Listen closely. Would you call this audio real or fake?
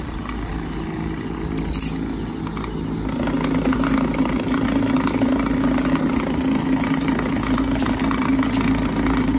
real